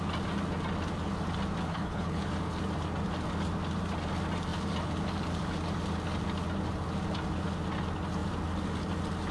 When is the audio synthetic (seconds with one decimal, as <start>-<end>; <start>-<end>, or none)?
1.7-2.2